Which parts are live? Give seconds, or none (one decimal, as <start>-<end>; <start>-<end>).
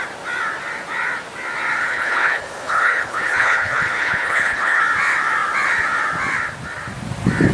0.0-1.8; 4.8-7.5